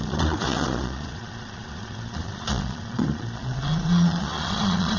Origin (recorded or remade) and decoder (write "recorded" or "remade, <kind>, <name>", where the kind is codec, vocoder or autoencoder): remade, vocoder, Vocos